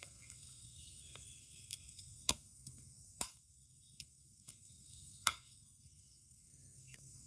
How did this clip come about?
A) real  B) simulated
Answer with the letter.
B